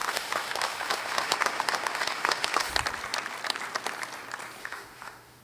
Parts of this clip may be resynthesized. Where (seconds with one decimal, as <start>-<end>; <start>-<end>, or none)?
0.0-2.7; 4.6-5.4